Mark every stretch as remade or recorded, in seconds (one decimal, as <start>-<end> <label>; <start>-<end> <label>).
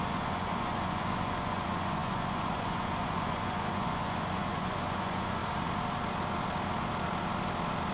0.0-5.4 remade; 5.4-7.9 recorded